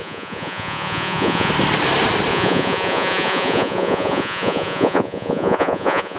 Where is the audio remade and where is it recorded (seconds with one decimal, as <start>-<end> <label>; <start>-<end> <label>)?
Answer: 0.0-1.5 remade; 1.5-2.3 recorded; 2.3-6.2 remade